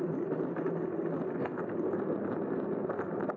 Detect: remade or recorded recorded